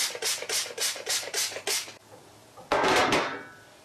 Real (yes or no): yes